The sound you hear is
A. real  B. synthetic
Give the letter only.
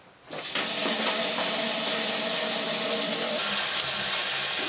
A